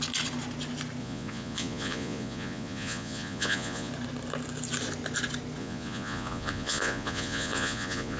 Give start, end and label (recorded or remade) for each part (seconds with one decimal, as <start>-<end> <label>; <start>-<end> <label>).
0.0-1.0 recorded; 1.0-3.9 remade; 3.9-5.6 recorded; 5.6-8.2 remade